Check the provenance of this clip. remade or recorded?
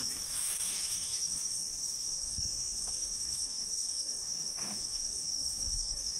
remade